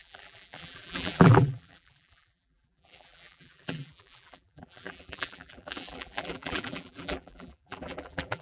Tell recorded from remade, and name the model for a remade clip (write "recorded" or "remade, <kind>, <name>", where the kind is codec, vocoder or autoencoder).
remade, vocoder, BigVGAN v2